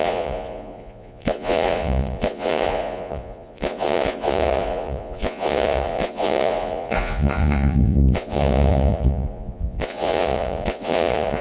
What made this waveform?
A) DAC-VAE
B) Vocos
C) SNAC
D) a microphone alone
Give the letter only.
B